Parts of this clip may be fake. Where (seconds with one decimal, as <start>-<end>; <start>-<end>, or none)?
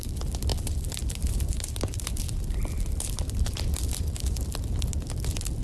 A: 0.5-3.9